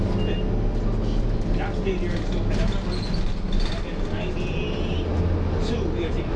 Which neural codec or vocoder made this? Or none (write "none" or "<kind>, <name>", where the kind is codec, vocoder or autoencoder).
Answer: none